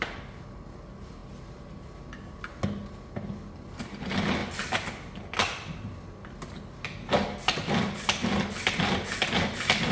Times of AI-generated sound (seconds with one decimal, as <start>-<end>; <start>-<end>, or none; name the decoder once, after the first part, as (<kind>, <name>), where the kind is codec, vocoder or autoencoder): none